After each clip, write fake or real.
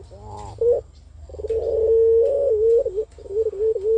real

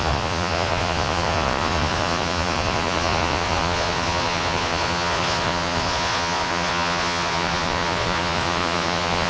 fake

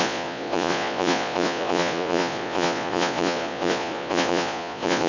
fake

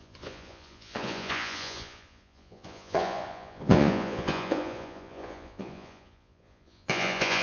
fake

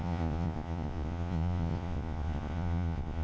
fake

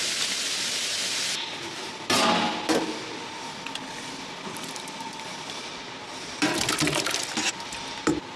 real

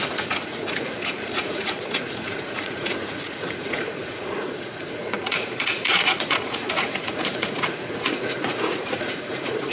fake